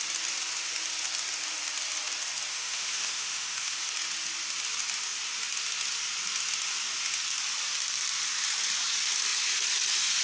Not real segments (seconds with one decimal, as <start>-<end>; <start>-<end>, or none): 2.5-3.9